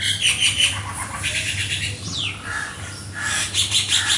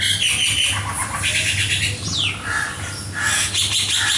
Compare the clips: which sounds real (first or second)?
second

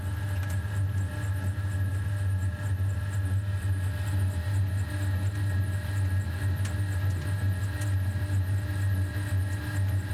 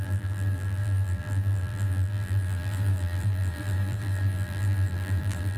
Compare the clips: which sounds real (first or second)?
first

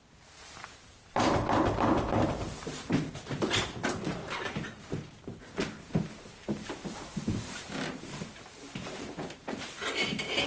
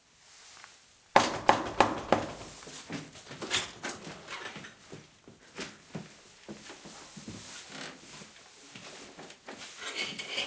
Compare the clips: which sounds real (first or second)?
second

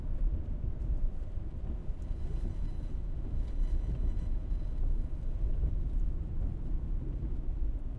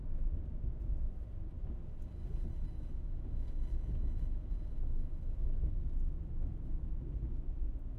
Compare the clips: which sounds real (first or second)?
second